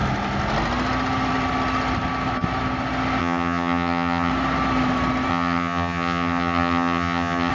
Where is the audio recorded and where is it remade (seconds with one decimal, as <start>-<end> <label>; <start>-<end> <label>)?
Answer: 0.0-3.2 recorded; 3.2-4.3 remade; 4.3-5.3 recorded; 5.3-7.5 remade